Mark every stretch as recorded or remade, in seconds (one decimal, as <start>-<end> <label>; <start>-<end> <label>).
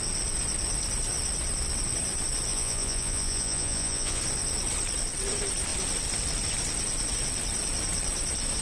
0.0-2.5 recorded; 2.5-4.2 remade; 4.2-8.6 recorded